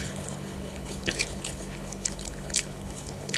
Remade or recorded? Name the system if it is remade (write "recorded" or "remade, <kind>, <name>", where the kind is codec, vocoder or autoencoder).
remade, codec, HILCodec